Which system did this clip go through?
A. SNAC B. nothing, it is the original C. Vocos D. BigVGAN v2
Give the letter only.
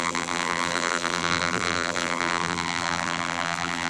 D